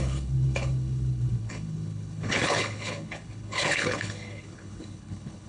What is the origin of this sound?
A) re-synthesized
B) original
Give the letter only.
A